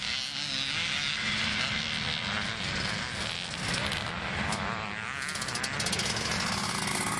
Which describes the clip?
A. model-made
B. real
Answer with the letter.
B